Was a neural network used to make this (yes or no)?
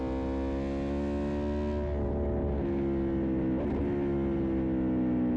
no